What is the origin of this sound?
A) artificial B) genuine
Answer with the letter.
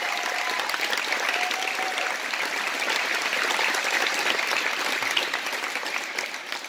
B